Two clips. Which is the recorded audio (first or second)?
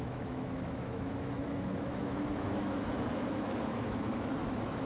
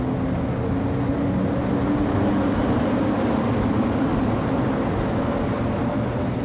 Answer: second